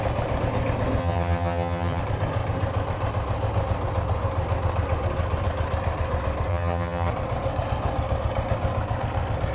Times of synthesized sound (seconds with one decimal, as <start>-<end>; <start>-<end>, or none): 1.0-2.0; 6.5-7.1